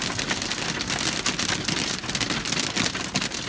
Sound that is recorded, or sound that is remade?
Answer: recorded